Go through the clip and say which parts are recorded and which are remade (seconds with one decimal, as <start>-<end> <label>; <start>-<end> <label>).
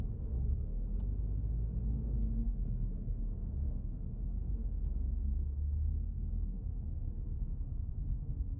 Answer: 0.0-0.7 remade; 0.7-1.8 recorded; 1.8-8.6 remade